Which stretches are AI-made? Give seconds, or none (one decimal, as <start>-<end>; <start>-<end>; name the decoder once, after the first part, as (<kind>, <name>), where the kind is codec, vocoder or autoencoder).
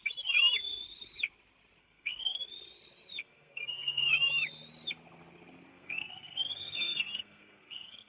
1.8-2.4 (codec, SNAC); 3.2-4.1; 5.7-8.1